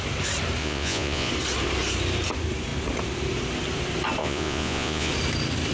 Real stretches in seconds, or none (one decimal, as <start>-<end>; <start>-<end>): 0.0-0.6; 1.3-4.2; 5.1-5.7